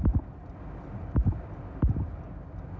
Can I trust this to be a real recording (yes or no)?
yes